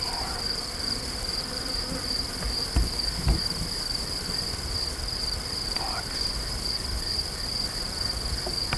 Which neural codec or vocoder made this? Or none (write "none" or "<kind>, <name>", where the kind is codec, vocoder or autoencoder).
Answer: vocoder, BigVGAN v2